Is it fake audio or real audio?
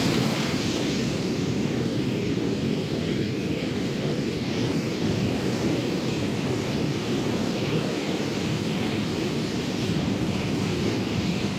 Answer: fake